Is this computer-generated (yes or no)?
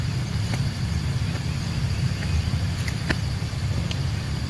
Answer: yes